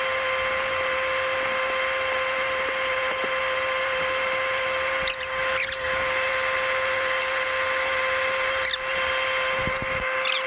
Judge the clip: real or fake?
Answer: real